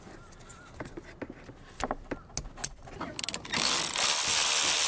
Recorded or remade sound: recorded